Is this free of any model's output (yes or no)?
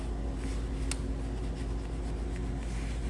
yes